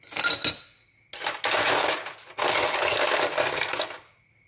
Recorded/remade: recorded